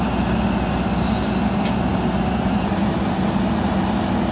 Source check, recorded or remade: recorded